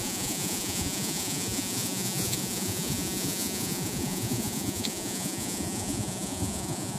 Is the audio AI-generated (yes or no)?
yes